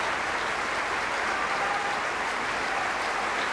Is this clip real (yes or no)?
yes